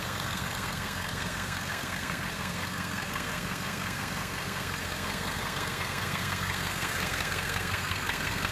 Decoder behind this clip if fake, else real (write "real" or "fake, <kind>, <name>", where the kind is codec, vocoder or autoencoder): fake, codec, SNAC